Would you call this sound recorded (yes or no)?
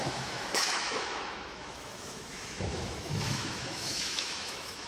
no